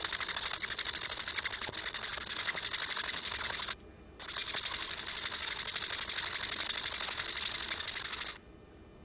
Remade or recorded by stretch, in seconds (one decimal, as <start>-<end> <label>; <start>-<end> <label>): 0.0-9.0 recorded